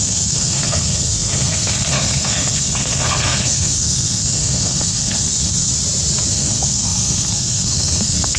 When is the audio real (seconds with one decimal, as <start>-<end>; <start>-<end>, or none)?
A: 5.7-6.3